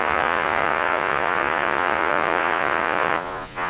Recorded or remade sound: remade